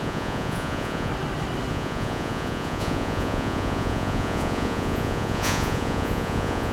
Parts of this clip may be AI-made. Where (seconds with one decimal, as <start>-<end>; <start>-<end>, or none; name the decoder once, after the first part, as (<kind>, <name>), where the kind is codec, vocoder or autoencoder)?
0.0-1.1 (vocoder, Vocos); 1.7-6.7